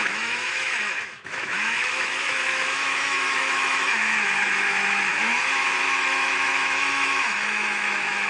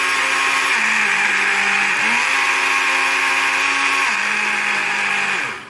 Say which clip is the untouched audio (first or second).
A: second